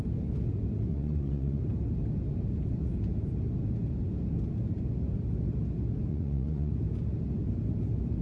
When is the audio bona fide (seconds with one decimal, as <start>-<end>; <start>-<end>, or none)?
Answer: 0.0-0.9; 1.6-6.1; 6.7-8.2